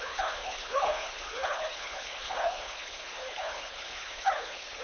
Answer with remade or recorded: remade